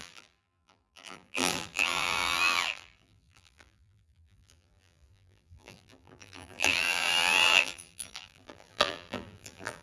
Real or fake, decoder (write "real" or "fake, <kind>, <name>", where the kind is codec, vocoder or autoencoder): fake, vocoder, BigVGAN v2